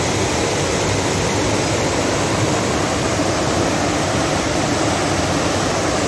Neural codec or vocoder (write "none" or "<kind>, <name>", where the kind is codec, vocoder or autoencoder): none